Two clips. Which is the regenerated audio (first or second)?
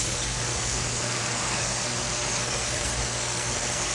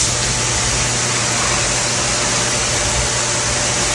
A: first